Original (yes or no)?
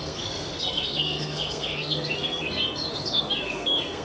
no